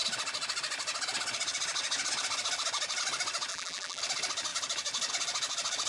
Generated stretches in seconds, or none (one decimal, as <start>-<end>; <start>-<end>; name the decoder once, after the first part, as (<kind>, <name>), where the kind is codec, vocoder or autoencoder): 3.5-4.0 (vocoder, BigVGAN v2)

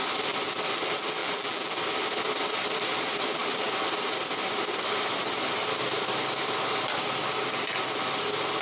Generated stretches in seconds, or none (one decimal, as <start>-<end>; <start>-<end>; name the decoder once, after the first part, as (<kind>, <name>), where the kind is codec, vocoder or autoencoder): 1.2-1.7 (vocoder, BigVGAN v2)

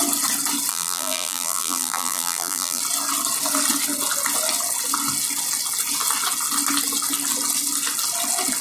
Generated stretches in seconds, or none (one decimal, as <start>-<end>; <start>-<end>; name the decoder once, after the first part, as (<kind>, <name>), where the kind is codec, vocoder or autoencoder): 0.7-2.8 (vocoder, BigVGAN v2)

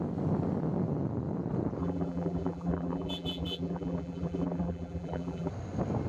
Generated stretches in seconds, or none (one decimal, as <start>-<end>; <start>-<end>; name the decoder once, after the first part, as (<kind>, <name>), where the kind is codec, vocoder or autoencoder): 1.8-5.5 (vocoder, BigVGAN v2)

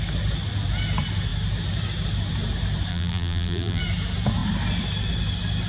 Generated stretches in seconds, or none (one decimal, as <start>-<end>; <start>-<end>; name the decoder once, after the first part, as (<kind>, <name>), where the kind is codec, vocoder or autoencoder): 2.9-3.8 (vocoder, BigVGAN v2)

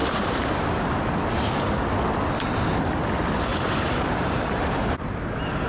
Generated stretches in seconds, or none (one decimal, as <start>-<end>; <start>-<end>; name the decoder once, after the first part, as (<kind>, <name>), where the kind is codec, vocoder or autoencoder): 0.0-1.0 (vocoder, BigVGAN v2); 3.5-5.1

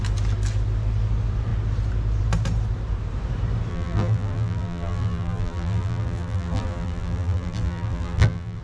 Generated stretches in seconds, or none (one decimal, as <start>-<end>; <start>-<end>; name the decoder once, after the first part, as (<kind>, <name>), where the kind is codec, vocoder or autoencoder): 3.7-8.6 (vocoder, BigVGAN v2)

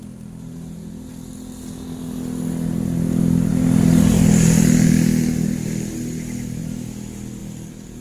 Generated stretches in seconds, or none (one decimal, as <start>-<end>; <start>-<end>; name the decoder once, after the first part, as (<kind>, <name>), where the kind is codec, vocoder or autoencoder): none